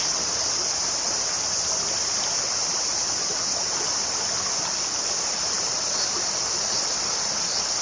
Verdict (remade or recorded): recorded